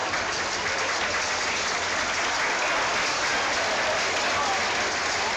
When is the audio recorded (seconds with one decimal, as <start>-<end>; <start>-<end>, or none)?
0.8-5.4